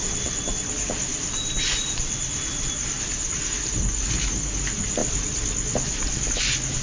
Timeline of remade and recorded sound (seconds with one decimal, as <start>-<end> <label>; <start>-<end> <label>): 0.0-1.1 recorded; 1.1-3.9 remade; 3.9-5.0 recorded; 5.0-6.3 remade; 6.3-6.8 recorded